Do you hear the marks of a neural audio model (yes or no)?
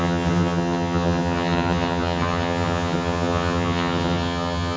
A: yes